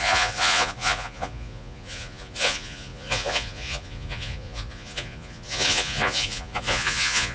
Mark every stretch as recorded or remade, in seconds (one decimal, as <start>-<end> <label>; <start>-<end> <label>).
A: 0.0-7.3 remade

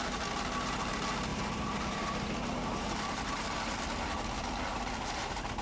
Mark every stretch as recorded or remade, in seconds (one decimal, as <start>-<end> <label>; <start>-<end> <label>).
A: 0.0-1.3 recorded; 1.3-3.8 remade; 3.8-4.7 recorded; 4.7-5.6 remade

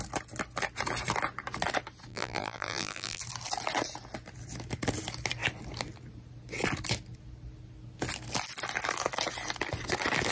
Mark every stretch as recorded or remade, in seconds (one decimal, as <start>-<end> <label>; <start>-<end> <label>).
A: 0.0-2.1 recorded; 2.1-3.2 remade; 3.2-10.3 recorded

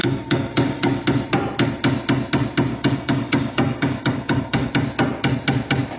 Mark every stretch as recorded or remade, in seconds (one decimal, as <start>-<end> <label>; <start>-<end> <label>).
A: 0.0-1.0 remade; 1.0-2.7 recorded; 2.7-4.7 remade; 4.7-6.0 recorded

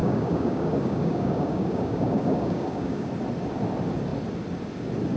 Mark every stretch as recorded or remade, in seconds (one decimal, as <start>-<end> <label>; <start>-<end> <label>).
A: 0.0-3.1 remade; 3.1-5.2 recorded

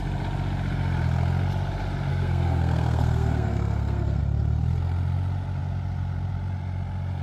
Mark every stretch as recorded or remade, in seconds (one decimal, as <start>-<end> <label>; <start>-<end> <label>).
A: 0.0-2.1 recorded; 2.1-4.2 remade; 4.2-7.2 recorded

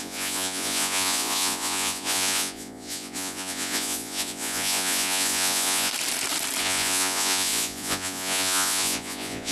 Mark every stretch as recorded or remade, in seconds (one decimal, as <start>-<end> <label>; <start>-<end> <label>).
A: 0.0-5.9 remade; 5.9-6.6 recorded; 6.6-9.5 remade